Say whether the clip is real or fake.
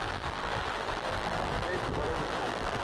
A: fake